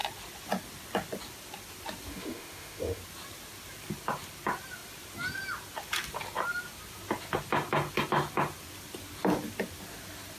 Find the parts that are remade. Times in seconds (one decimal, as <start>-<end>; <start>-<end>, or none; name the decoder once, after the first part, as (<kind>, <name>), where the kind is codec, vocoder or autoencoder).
2.1-3.0 (autoencoder, DAC-VAE)